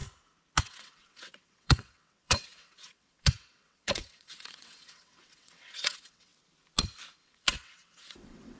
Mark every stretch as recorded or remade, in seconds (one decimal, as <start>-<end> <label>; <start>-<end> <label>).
0.0-0.6 recorded; 0.6-6.3 remade; 6.3-7.2 recorded; 7.2-8.6 remade